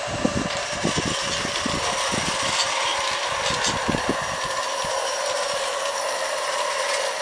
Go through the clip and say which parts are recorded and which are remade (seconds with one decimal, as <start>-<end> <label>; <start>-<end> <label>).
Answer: 0.0-0.9 remade; 0.9-7.2 recorded